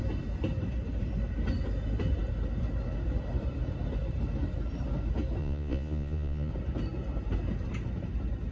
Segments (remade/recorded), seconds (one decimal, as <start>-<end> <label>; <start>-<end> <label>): 0.0-5.4 recorded; 5.4-6.5 remade; 6.5-8.5 recorded